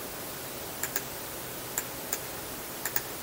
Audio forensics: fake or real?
real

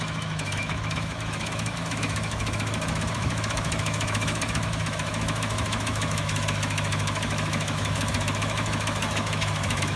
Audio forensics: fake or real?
fake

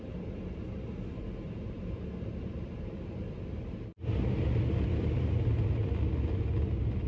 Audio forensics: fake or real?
real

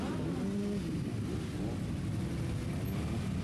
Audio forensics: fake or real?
real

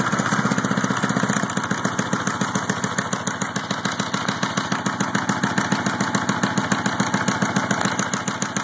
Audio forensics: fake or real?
real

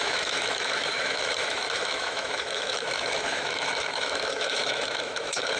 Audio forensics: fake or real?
fake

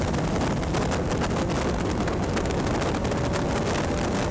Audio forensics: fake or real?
real